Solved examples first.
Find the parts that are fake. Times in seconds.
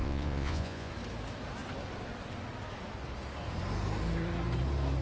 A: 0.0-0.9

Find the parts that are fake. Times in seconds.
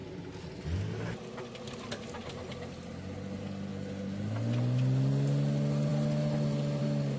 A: none